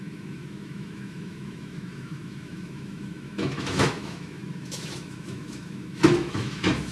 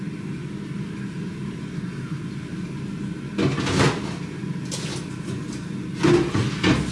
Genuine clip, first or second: second